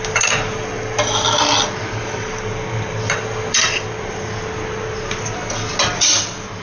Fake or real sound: real